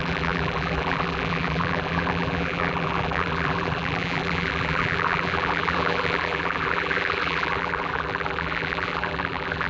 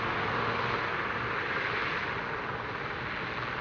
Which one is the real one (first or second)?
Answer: second